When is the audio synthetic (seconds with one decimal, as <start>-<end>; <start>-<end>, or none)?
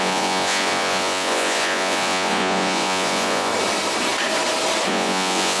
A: 0.0-3.5; 4.9-5.6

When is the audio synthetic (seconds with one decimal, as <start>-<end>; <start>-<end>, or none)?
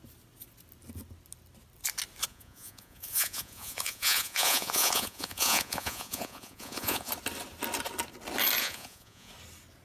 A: 2.3-7.1; 8.6-9.3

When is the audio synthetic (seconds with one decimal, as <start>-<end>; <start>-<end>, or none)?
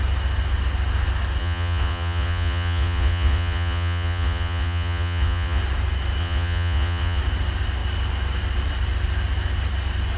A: 1.4-5.6; 6.2-7.2